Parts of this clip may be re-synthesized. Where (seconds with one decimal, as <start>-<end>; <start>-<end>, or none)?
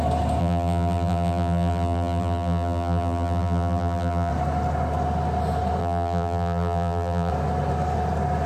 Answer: 0.4-4.3; 5.8-7.3